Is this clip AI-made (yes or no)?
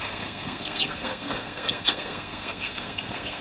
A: yes